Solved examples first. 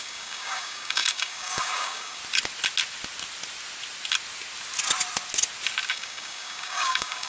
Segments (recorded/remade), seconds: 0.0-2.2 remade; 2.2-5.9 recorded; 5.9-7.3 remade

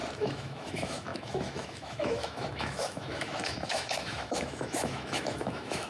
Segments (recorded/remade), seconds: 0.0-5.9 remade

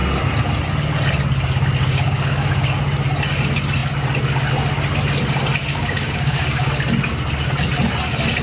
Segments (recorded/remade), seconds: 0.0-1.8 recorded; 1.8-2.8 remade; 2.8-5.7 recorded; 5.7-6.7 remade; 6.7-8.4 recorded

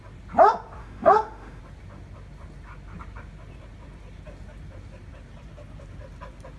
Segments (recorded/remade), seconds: 0.0-0.8 recorded; 0.8-1.6 remade; 1.6-6.6 recorded

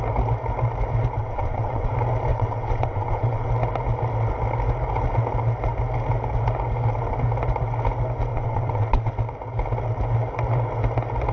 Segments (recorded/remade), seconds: 0.0-1.2 recorded; 1.2-1.9 remade; 1.9-2.3 recorded; 2.3-3.5 remade; 3.5-8.3 recorded; 8.3-9.1 remade; 9.1-11.3 recorded

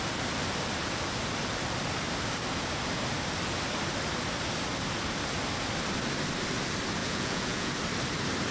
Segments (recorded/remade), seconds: 0.0-7.0 recorded; 7.0-7.7 remade; 7.7-8.5 recorded